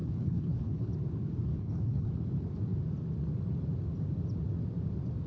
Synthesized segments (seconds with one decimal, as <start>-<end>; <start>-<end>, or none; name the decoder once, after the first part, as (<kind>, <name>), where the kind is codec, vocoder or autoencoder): 0.0-0.9 (codec, HILCodec); 1.5-2.1